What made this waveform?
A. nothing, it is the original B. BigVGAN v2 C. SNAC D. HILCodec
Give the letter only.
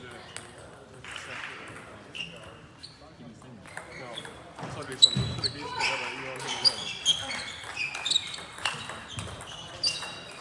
A